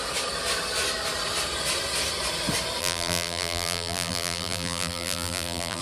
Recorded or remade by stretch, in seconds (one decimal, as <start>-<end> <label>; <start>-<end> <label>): 0.0-2.8 recorded; 2.8-5.8 remade